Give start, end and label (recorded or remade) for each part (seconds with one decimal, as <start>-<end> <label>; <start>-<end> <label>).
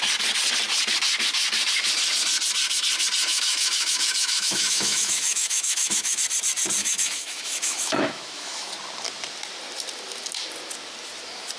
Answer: 0.0-3.3 recorded; 3.3-6.2 remade; 6.2-6.8 recorded; 6.8-8.7 remade; 8.7-11.6 recorded